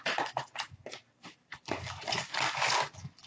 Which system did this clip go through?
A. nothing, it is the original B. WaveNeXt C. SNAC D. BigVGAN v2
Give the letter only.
A